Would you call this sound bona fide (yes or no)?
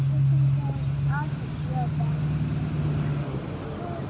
yes